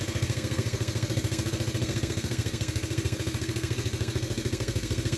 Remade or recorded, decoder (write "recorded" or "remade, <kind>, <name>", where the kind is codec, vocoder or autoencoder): remade, codec, SNAC